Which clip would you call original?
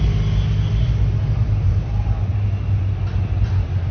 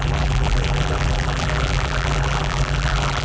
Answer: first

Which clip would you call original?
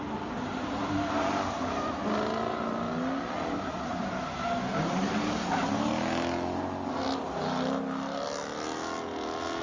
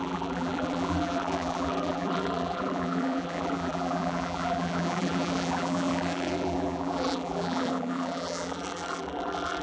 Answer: first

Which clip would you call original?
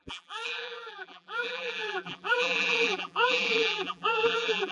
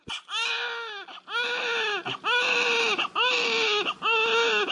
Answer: second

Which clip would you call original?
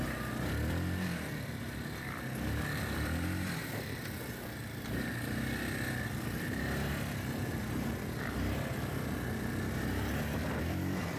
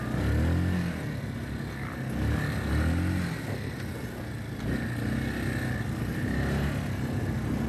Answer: second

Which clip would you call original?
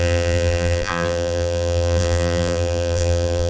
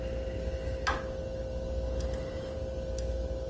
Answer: second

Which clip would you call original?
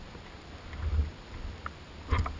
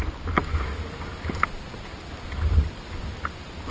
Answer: first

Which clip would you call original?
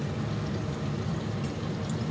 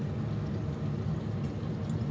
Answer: second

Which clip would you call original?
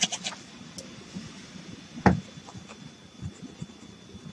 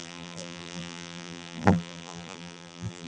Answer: first